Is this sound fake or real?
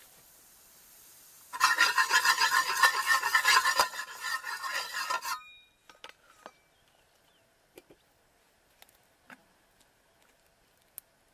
real